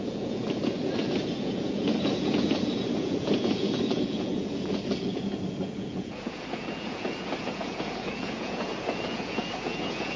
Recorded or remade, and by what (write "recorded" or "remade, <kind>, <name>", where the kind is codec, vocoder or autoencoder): remade, vocoder, Vocos